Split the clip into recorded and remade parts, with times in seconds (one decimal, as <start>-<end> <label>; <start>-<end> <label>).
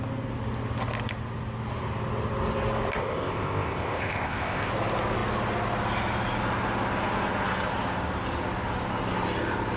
0.0-3.0 recorded; 3.0-4.7 remade; 4.7-9.8 recorded